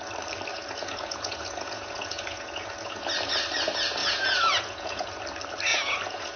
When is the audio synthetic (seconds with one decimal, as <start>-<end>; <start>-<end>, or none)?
0.5-3.1; 4.0-5.2; 5.7-6.4